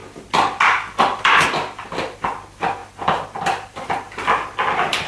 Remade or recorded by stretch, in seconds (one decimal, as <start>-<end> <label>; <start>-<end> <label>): 0.0-5.1 recorded